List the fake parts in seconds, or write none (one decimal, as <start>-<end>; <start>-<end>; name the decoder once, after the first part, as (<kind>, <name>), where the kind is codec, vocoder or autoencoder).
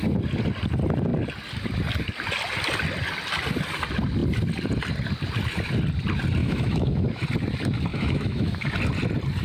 6.4-7.2 (autoencoder, DAC-VAE); 7.9-8.7